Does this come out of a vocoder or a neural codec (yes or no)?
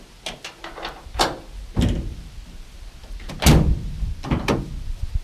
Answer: no